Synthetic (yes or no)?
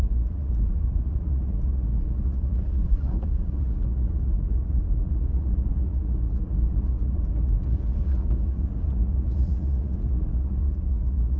yes